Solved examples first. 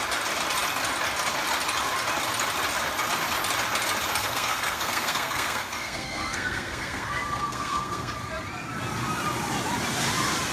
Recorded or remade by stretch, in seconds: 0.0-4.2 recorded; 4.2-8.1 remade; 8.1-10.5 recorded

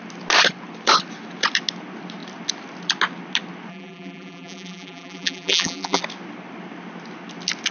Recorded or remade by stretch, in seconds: 0.0-3.7 recorded; 3.7-6.0 remade; 6.0-7.7 recorded